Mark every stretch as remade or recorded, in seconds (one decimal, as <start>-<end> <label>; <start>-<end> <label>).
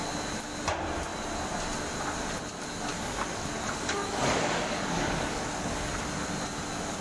0.0-2.9 recorded; 2.9-5.9 remade; 5.9-7.0 recorded